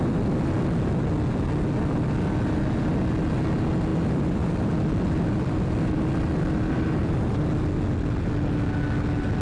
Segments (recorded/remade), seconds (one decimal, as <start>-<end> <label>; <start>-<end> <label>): 0.0-3.9 recorded; 3.9-7.4 remade; 7.4-9.4 recorded